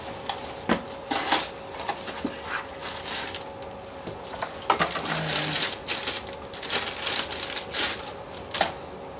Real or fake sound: real